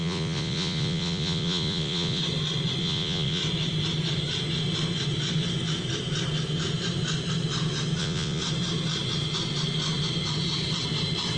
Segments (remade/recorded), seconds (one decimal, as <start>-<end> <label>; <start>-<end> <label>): 0.0-2.2 remade; 2.2-2.8 recorded; 2.8-3.4 remade; 3.4-8.0 recorded; 8.0-8.4 remade; 8.4-11.4 recorded